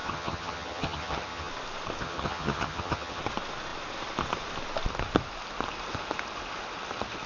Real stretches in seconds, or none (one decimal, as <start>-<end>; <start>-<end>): 1.5-2.0; 3.2-7.3